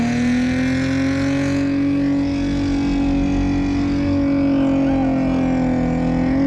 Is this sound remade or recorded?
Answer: recorded